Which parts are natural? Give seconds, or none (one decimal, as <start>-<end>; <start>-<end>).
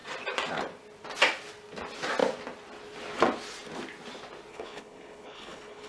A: 0.0-4.5